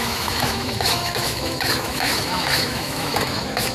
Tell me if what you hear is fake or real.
fake